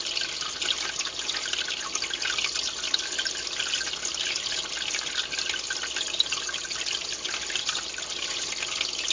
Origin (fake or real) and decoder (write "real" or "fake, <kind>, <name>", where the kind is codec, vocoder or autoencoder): real